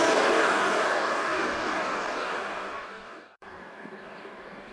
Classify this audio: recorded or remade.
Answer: remade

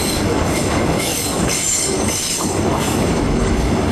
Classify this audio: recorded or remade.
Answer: remade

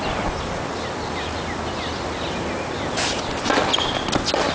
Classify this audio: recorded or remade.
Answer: recorded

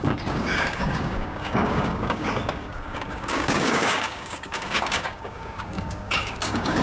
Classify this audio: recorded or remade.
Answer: remade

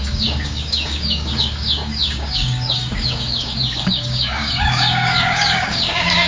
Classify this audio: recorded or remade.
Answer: remade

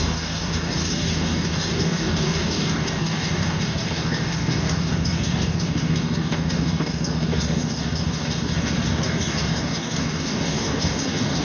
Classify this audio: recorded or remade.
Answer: remade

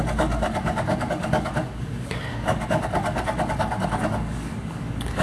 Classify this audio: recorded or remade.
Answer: remade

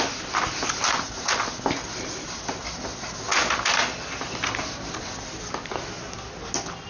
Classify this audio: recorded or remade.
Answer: recorded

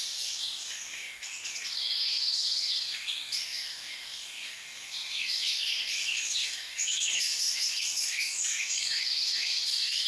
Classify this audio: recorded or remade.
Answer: remade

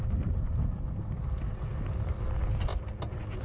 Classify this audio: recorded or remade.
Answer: recorded